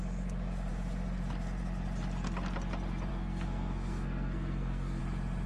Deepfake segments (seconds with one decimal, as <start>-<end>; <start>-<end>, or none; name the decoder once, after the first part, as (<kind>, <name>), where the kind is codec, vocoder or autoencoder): 3.1-5.0 (codec, SNAC)

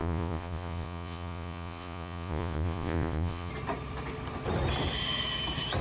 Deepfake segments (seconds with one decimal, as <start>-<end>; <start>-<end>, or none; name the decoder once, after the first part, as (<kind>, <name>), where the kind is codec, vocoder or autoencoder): 0.0-3.5 (vocoder, Vocos)

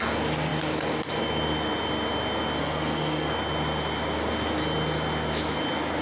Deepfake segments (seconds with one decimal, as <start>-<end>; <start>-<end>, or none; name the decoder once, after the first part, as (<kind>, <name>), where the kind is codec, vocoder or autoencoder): 2.6-3.3 (codec, SNAC)

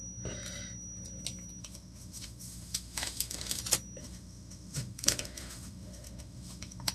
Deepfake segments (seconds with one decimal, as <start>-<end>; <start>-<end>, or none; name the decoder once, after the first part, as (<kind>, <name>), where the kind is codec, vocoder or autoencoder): 1.6-3.6 (autoencoder, DAC-VAE); 4.0-6.9

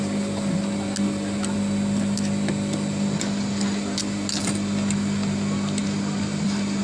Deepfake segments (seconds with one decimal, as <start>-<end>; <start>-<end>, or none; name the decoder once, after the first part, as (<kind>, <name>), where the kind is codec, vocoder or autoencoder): none

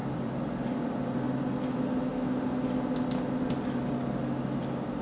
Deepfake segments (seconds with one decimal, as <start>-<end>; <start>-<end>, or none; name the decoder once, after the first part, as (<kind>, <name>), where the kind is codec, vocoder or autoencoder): 0.0-1.5 (vocoder, BigVGAN v2)